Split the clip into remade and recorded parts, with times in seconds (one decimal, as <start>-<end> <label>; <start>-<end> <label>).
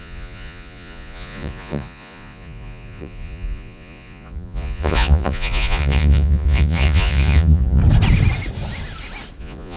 0.0-7.8 remade; 7.8-9.4 recorded; 9.4-9.8 remade